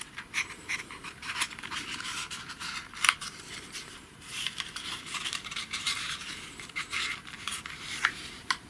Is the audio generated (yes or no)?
yes